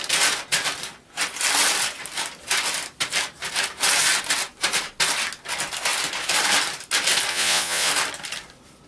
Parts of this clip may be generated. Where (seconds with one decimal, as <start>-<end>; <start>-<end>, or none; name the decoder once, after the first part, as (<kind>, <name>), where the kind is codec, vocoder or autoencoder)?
7.3-7.9 (vocoder, Vocos)